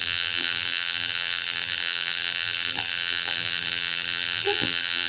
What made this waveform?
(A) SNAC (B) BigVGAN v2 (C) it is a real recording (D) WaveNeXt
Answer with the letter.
B